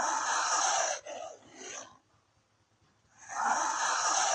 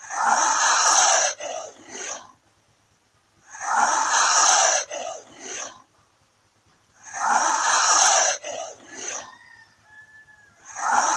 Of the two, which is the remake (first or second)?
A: second